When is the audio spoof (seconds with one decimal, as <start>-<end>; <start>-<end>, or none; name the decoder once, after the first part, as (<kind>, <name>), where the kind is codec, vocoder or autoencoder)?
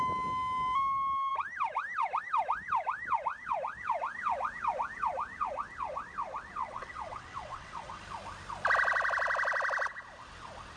6.6-8.0 (vocoder, WaveNeXt)